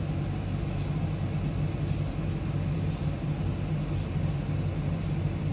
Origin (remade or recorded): recorded